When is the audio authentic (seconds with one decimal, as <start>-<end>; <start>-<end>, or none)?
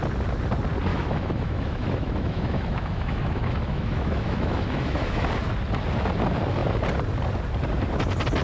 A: 0.0-0.9; 5.3-8.4